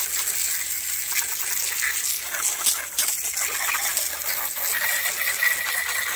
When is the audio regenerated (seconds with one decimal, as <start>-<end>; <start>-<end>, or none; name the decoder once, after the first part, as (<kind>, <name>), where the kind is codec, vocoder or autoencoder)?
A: none